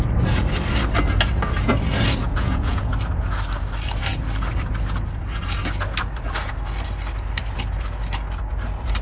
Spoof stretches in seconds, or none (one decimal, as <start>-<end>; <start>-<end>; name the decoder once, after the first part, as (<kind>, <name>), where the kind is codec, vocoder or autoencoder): 2.2-2.9 (vocoder, Vocos)